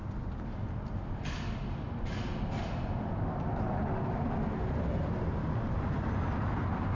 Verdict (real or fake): real